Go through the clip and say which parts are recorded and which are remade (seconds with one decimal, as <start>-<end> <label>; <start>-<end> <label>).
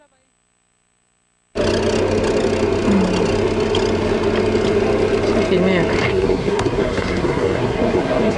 0.0-6.0 recorded; 6.0-8.4 remade